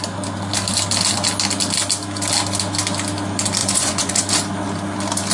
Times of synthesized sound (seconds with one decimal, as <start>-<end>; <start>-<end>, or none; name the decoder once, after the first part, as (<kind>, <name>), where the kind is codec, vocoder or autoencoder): 3.6-4.2 (vocoder, Vocos)